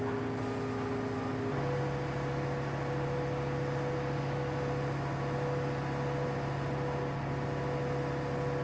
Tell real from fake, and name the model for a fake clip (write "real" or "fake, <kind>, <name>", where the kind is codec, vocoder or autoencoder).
real